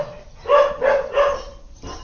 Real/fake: real